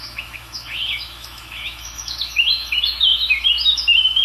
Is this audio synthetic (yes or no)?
yes